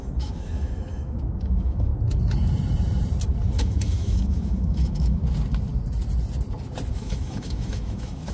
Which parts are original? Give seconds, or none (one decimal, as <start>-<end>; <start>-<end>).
1.9-3.6; 5.2-6.9